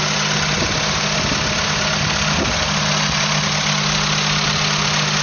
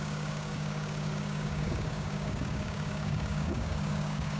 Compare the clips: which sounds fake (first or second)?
second